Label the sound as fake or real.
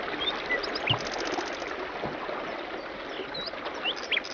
real